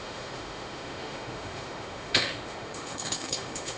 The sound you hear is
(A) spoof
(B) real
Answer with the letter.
A